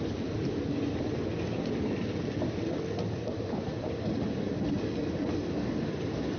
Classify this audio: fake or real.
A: real